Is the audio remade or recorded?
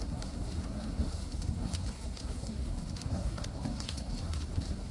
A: remade